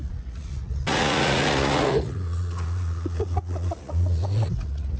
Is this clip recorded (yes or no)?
no